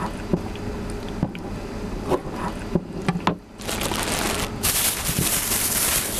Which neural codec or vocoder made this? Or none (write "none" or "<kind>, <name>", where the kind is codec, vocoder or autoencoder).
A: none